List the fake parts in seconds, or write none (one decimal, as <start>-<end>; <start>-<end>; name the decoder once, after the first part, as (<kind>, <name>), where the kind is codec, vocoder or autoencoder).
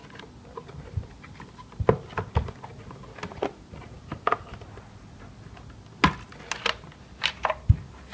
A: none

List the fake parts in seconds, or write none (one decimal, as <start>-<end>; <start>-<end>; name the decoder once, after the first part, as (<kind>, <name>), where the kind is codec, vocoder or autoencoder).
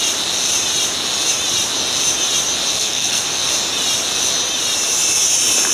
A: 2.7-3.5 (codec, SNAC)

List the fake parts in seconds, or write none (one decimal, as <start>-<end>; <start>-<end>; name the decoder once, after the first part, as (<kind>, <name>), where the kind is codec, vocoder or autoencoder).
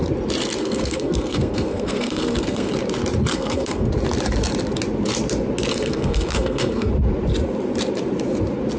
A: 0.6-2.7 (codec, SNAC); 3.3-3.9; 5.7-6.9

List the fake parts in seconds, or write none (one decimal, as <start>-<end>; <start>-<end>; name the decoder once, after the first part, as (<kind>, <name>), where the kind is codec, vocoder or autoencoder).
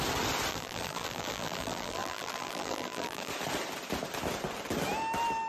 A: 0.5-3.3 (vocoder, BigVGAN v2)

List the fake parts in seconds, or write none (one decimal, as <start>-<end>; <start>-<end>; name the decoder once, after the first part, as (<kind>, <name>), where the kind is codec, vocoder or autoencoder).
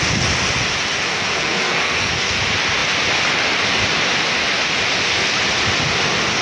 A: 1.1-2.4 (codec, SNAC)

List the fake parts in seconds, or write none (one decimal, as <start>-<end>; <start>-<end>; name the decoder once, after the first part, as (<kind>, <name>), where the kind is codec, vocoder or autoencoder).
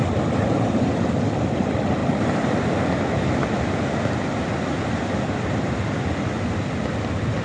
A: 2.0-6.4 (vocoder, BigVGAN v2)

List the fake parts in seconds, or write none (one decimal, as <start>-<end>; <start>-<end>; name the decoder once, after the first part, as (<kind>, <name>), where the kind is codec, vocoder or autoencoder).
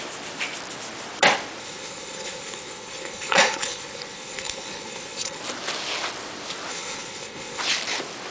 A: 1.6-5.4 (codec, HILCodec); 6.7-7.6